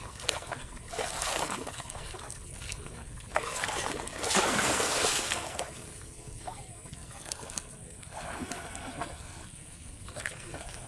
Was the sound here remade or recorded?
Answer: remade